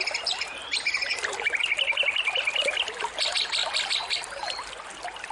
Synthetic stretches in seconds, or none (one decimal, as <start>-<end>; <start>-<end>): none